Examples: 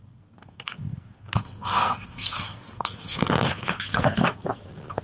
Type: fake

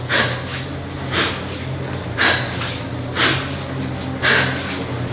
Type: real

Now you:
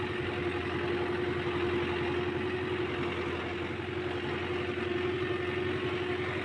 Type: real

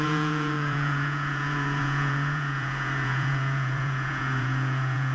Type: fake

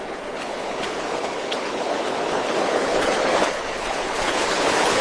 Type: fake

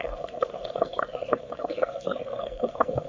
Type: fake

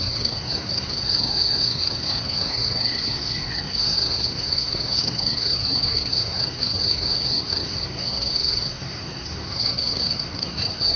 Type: fake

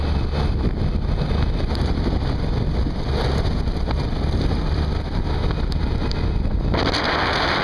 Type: real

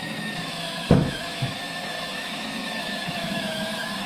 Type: fake